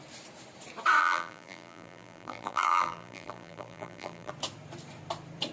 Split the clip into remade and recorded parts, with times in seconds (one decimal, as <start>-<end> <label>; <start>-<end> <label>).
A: 0.0-1.0 recorded; 1.0-4.3 remade; 4.3-5.5 recorded